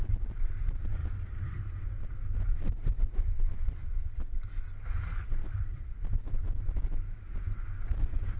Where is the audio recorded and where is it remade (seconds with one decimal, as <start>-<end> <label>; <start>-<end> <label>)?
0.0-5.4 recorded; 5.4-5.9 remade; 5.9-8.4 recorded